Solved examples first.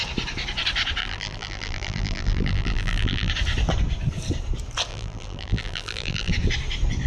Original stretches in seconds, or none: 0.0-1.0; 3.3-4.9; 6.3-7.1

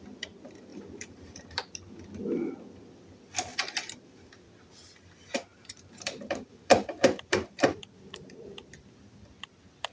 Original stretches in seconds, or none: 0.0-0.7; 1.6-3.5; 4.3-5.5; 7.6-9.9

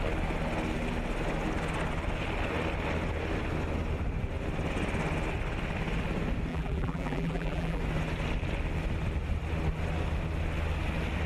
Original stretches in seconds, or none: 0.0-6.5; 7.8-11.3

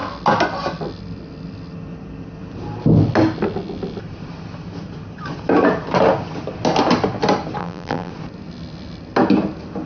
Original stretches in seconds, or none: 0.0-7.6; 8.1-9.9

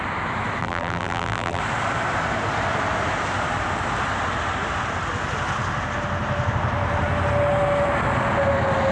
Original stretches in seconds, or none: 0.0-0.6; 1.6-8.9

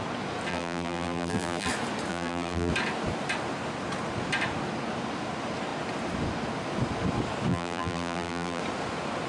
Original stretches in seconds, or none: 0.0-0.5; 1.7-2.1; 2.7-7.5; 8.6-9.3

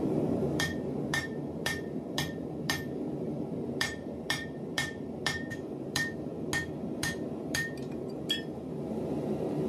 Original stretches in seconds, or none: 6.3-7.0